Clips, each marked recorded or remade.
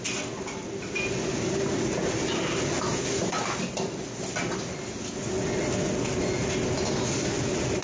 recorded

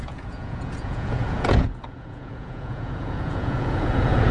remade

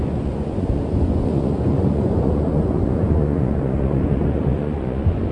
remade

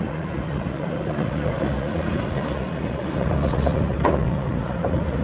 remade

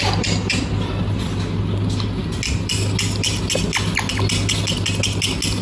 recorded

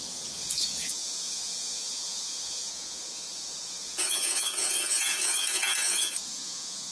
remade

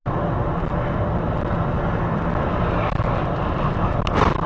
recorded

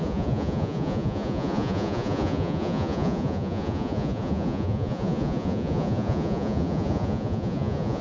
remade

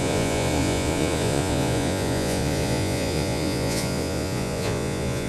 remade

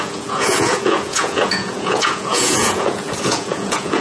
remade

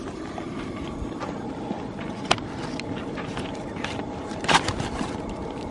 recorded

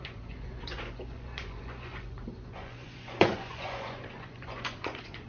remade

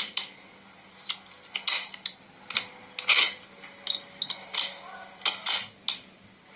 recorded